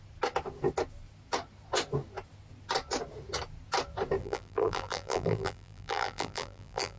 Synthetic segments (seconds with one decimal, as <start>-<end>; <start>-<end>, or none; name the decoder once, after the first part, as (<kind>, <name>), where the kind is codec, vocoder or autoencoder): 4.2-7.0 (vocoder, BigVGAN v2)